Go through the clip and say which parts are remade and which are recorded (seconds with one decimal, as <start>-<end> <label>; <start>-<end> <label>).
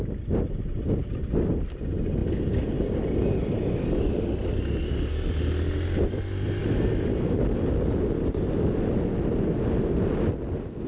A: 0.0-10.9 recorded